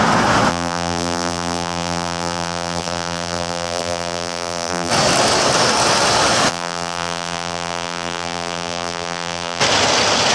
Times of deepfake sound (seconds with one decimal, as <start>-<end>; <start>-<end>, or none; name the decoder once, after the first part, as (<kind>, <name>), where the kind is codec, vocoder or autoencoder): 0.5-4.9 (vocoder, BigVGAN v2); 6.5-9.6